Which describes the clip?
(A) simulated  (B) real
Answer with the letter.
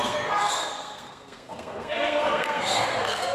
A